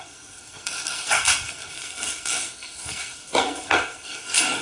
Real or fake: fake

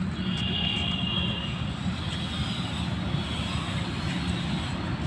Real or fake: real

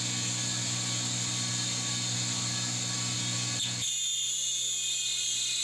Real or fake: real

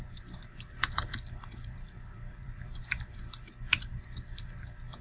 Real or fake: fake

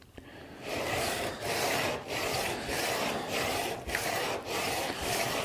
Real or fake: fake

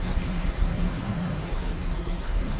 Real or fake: fake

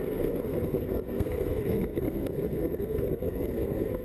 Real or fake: fake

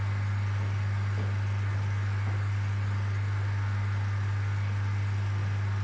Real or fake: real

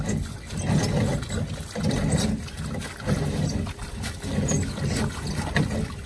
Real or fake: real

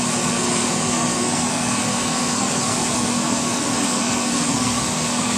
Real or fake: fake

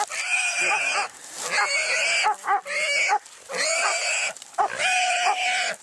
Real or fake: real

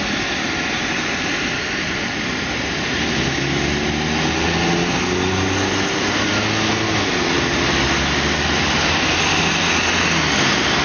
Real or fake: real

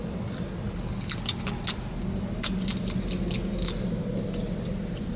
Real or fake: real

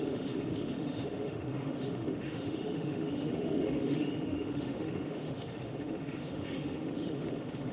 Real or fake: fake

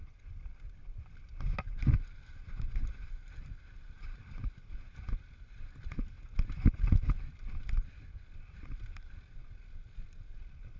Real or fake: real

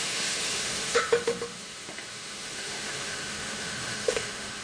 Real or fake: fake